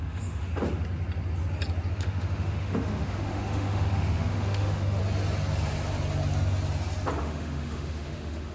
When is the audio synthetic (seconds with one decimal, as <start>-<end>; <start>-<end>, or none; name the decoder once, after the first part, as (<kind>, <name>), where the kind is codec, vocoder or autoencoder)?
0.0-0.5 (autoencoder, DAC-VAE); 1.9-5.0; 7.2-8.5